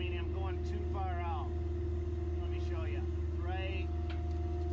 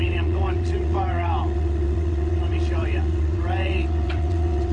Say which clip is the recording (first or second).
first